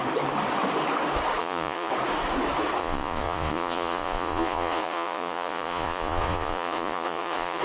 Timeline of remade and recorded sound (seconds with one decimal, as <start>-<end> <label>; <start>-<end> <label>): 0.0-1.4 recorded; 1.4-1.9 remade; 1.9-2.8 recorded; 2.8-7.6 remade